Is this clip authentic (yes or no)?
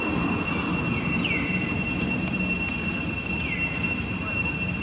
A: yes